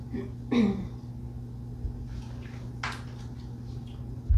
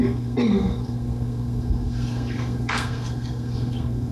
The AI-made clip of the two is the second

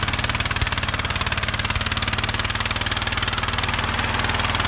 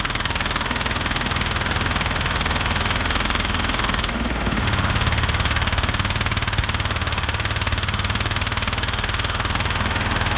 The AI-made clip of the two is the second